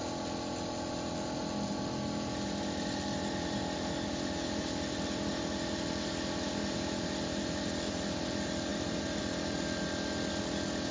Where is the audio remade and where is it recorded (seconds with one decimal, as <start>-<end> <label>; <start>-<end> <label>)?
0.0-8.7 recorded; 8.7-9.2 remade; 9.2-10.9 recorded